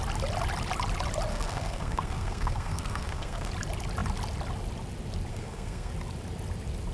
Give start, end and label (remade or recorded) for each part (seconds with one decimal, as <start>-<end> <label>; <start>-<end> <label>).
0.0-1.3 recorded; 1.3-3.5 remade; 3.5-5.3 recorded; 5.3-5.9 remade; 5.9-6.9 recorded